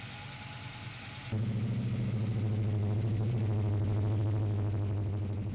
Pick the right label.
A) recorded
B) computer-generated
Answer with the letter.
A